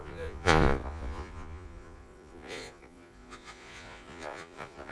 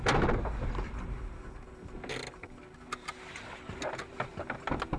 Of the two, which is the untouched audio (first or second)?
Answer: second